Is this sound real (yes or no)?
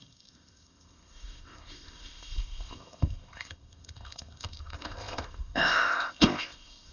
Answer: no